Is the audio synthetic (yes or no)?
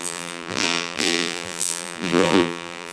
yes